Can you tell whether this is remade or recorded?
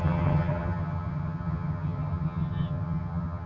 remade